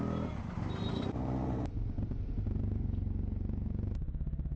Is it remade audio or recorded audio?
remade